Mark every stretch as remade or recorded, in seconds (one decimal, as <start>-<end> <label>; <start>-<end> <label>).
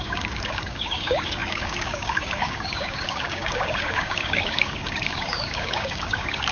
0.0-6.5 remade